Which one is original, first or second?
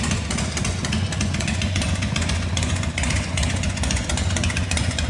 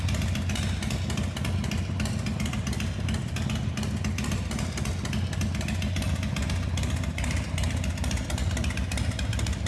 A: second